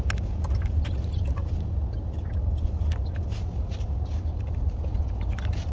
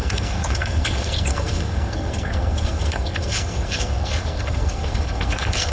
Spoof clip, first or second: second